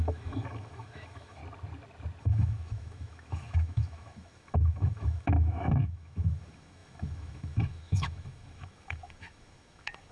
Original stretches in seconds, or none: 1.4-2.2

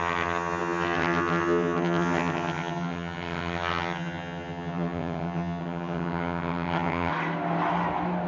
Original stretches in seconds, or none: 7.1-8.3

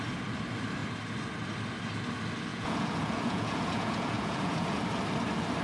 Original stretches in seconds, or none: 0.0-2.5; 4.8-5.6

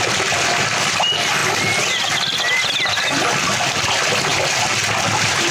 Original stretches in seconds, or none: 0.0-5.5

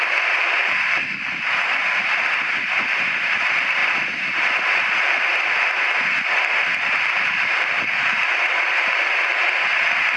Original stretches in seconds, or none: 3.8-5.0

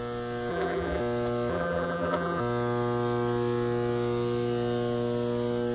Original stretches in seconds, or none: 0.0-0.5; 1.0-1.5; 2.4-5.7

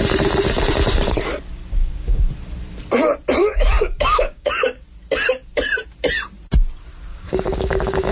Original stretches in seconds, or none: 0.0-1.8; 2.3-3.4; 4.5-7.1